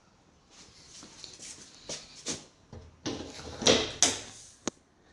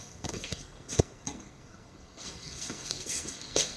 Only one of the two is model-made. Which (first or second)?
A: second